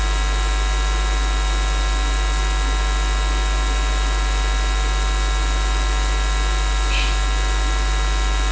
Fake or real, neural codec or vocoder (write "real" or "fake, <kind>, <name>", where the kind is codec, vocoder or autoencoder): real